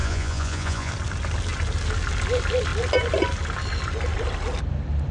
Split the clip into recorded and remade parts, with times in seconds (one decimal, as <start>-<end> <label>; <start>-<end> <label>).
0.0-0.9 remade; 0.9-5.1 recorded